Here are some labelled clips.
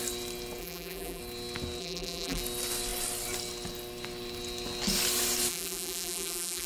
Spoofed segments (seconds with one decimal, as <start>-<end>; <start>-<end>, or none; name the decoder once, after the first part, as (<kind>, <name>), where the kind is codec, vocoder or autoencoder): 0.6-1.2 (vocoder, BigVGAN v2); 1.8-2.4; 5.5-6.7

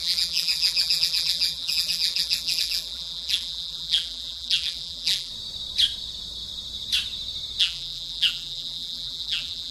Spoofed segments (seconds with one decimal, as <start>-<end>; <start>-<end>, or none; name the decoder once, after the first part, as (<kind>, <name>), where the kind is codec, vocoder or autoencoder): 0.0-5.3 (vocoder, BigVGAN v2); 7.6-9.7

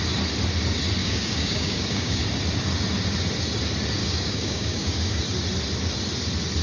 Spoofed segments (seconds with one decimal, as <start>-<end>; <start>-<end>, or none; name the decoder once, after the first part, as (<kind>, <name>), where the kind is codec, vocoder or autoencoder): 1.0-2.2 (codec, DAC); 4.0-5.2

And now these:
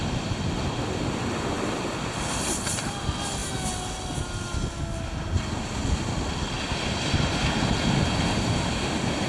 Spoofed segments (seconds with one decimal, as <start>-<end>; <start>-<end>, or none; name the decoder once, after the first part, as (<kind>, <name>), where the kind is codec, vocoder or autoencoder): none

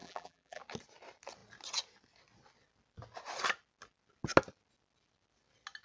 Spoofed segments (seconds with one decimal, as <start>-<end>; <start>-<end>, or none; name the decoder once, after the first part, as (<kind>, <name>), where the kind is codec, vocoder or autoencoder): 0.0-0.6 (vocoder, BigVGAN v2)

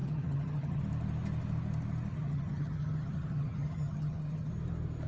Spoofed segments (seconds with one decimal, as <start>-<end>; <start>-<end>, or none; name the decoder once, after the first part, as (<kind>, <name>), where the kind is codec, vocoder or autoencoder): 0.0-0.8 (vocoder, HiFi-GAN); 2.1-4.5

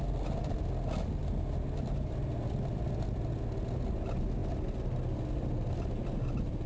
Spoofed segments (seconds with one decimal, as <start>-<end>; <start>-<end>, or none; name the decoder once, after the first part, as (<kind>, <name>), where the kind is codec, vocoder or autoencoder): none

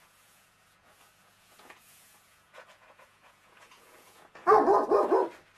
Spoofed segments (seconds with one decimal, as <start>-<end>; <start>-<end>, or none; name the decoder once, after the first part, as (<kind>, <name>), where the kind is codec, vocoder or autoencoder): 0.0-4.4 (vocoder, Vocos)